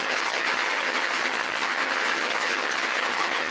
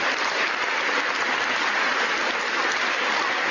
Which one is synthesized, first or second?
first